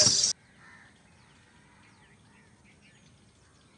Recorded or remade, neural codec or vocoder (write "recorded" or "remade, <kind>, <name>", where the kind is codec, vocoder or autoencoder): recorded